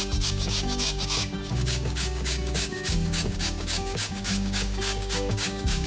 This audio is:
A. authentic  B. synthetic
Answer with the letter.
B